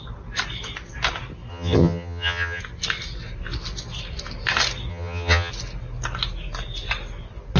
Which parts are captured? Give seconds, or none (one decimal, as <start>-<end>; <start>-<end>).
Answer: 0.0-1.5; 2.6-4.9; 5.5-7.6